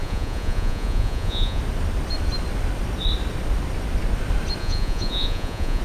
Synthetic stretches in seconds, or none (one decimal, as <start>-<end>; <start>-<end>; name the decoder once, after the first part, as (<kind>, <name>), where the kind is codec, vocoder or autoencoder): 0.0-1.6 (vocoder, Vocos); 4.6-5.8